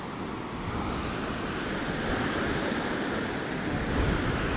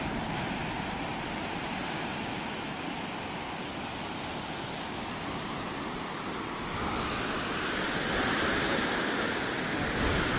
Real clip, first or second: second